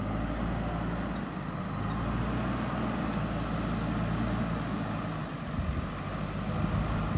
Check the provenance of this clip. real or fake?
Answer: real